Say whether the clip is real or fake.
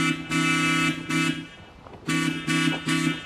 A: real